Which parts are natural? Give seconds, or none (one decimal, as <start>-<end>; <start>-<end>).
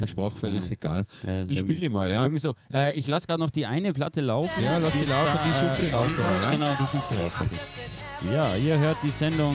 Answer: 3.3-5.8; 7.5-9.5